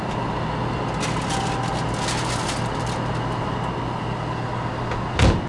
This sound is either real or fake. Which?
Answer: real